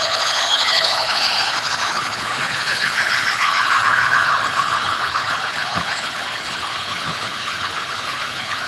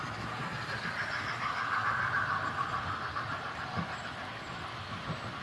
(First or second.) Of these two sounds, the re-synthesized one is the first